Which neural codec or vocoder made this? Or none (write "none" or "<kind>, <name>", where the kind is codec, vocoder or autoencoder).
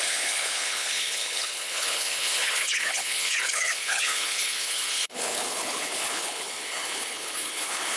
codec, HILCodec